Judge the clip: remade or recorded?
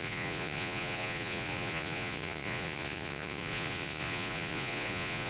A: remade